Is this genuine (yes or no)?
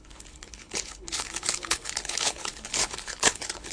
no